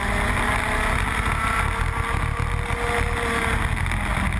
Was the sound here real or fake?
real